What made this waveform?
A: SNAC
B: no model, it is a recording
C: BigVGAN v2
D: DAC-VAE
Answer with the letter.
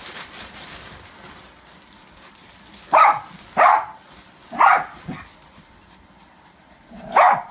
B